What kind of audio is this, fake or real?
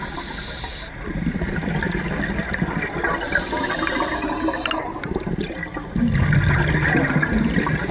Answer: real